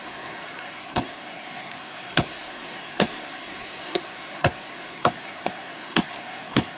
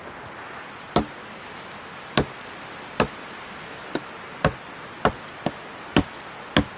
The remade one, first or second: first